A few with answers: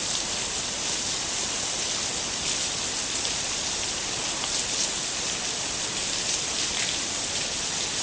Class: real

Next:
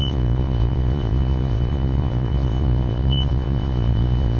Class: fake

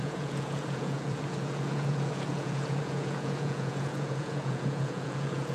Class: fake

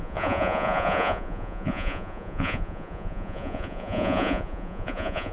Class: fake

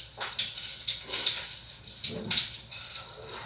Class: real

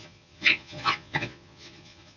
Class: fake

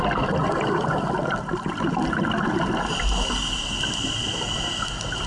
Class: real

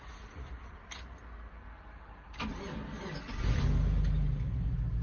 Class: real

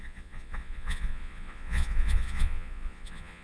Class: fake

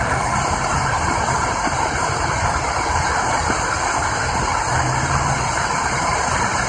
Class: real